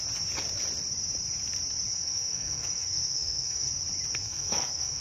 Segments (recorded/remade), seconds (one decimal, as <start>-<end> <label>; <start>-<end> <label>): 0.0-1.9 recorded; 1.9-3.7 remade; 3.7-4.2 recorded; 4.2-5.0 remade